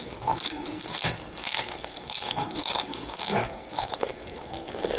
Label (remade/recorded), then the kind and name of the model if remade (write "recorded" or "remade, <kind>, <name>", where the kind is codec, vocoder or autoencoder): remade, codec, SNAC